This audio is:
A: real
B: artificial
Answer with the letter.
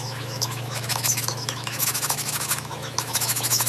B